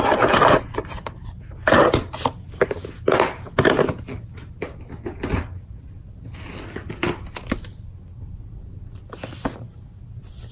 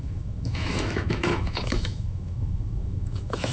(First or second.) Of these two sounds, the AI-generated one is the second